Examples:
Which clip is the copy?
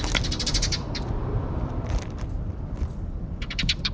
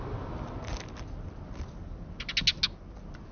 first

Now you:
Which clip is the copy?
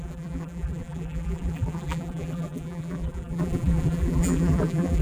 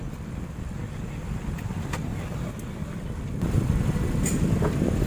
first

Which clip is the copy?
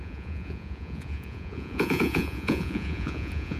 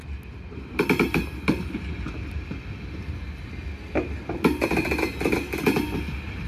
first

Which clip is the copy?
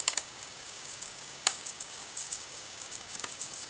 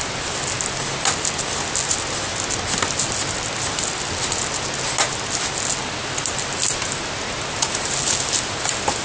first